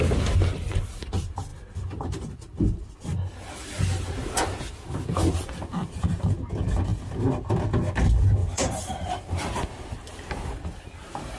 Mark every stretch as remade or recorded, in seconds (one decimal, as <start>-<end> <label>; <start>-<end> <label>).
0.0-8.4 recorded; 8.4-9.3 remade; 9.3-11.4 recorded